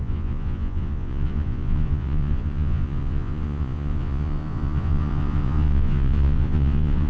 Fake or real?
fake